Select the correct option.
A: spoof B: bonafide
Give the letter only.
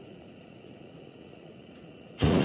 A